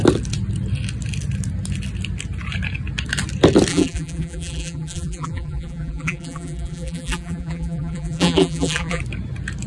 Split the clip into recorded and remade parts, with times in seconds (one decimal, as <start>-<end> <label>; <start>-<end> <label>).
0.0-3.7 recorded; 3.7-9.0 remade; 9.0-9.7 recorded